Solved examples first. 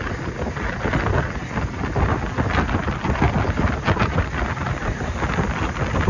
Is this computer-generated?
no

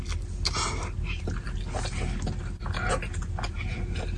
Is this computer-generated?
no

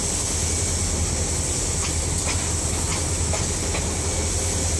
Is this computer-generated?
no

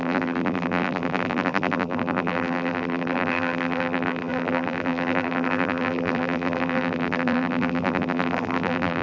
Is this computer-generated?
yes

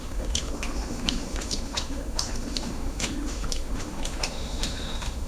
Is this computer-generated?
yes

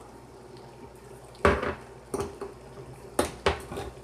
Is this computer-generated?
no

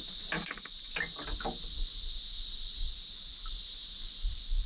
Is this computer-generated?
no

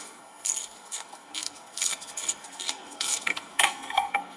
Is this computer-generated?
yes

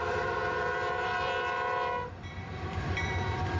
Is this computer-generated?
yes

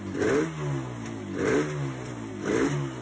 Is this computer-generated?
no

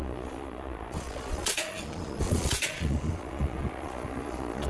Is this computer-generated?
yes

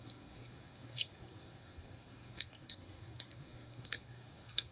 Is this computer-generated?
yes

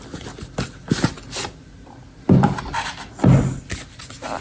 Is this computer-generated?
no